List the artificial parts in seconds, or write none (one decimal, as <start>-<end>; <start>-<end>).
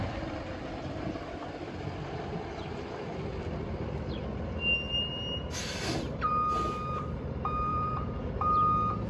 7.7-8.3